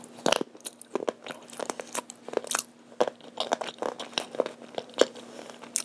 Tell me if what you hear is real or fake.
real